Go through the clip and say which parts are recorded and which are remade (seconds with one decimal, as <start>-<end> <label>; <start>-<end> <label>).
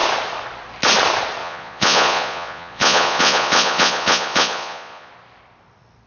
0.0-1.4 recorded; 1.4-5.1 remade; 5.1-6.1 recorded